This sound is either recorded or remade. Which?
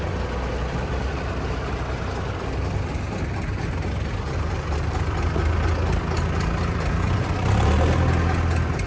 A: recorded